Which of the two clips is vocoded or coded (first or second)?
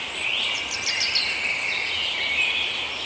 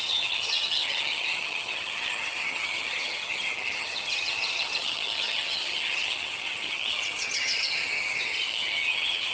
second